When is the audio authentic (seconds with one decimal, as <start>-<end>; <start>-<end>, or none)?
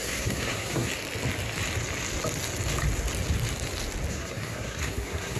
0.9-4.1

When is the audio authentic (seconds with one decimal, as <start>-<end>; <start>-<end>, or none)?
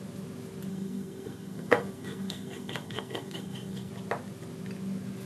0.0-0.7; 3.9-5.3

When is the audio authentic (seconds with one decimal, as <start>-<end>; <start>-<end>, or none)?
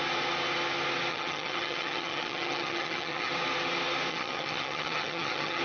0.0-1.1; 3.3-4.1